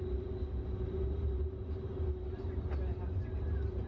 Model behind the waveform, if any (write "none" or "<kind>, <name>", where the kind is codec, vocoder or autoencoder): none